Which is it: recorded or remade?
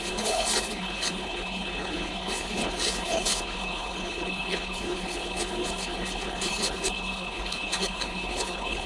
remade